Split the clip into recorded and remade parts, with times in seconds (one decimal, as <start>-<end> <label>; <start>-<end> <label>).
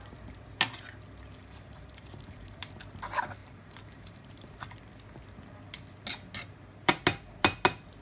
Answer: 0.0-1.4 recorded; 1.4-2.6 remade; 2.6-3.4 recorded; 3.4-4.8 remade; 4.8-8.0 recorded